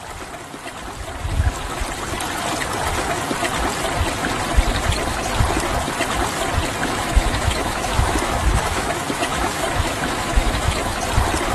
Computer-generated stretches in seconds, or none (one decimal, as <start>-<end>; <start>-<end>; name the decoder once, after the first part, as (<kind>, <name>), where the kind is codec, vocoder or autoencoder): 6.8-11.0 (autoencoder, DAC-VAE)

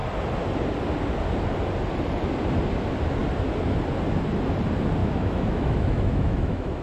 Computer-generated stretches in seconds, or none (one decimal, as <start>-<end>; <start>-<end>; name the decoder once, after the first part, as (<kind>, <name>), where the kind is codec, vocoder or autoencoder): 5.0-6.8 (autoencoder, DAC-VAE)